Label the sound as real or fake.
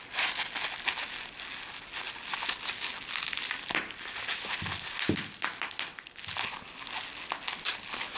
real